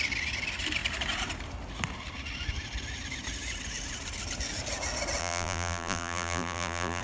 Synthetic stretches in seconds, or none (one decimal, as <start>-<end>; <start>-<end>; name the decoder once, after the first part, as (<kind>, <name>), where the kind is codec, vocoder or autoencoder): 5.2-7.0 (vocoder, BigVGAN v2)